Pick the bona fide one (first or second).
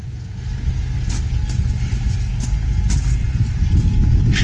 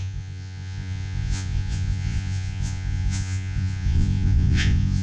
first